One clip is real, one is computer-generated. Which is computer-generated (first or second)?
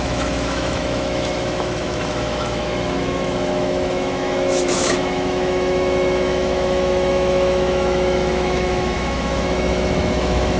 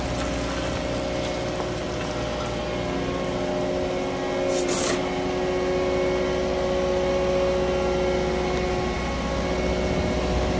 first